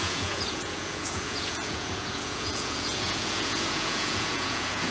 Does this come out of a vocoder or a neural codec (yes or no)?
yes